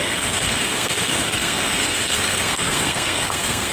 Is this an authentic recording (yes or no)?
no